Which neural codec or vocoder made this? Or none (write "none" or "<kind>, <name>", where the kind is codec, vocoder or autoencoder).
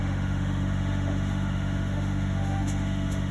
autoencoder, DAC-VAE